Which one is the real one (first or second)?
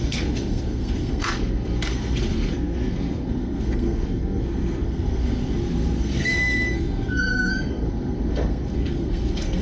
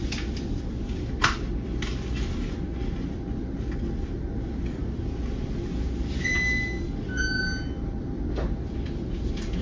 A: second